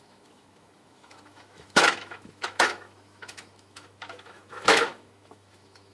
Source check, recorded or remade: remade